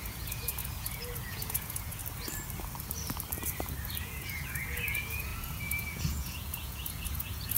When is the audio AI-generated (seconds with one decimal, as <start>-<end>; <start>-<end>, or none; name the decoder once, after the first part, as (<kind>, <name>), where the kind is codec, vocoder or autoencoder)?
0.0-2.0 (vocoder, Vocos); 4.0-7.6